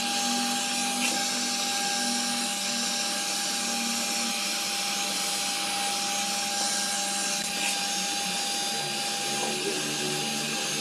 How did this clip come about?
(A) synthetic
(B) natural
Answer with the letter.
B